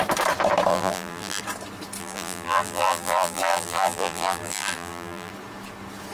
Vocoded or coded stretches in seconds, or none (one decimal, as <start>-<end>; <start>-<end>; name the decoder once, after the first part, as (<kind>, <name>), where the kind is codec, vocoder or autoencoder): 0.7-1.4 (vocoder, BigVGAN v2); 2.0-5.3